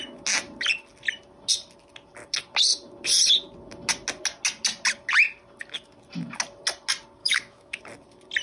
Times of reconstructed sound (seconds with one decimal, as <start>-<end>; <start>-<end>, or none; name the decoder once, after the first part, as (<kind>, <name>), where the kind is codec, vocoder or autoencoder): 7.2-7.8 (autoencoder, DAC-VAE)